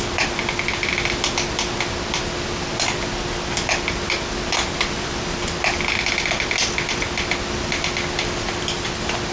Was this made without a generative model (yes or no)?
yes